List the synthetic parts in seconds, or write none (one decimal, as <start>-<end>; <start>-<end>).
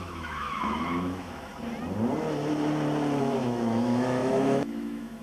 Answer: 0.0-1.5; 3.2-5.2